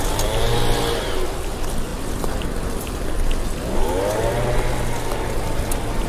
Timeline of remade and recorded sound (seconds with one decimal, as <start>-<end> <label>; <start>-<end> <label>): 0.0-6.1 recorded